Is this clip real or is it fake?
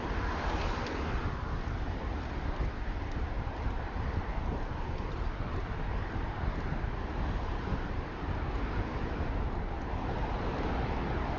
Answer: real